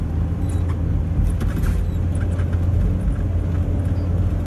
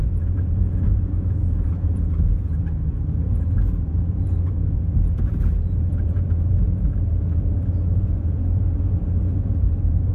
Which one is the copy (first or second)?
second